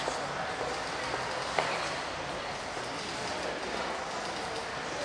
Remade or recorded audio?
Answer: recorded